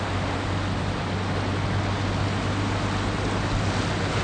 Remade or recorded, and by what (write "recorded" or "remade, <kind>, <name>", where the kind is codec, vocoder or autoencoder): recorded